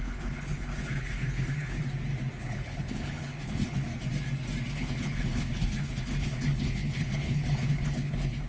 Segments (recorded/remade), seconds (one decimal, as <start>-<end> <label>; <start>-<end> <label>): 0.0-1.8 remade; 1.8-2.4 recorded; 2.4-3.9 remade; 3.9-4.7 recorded; 4.7-8.5 remade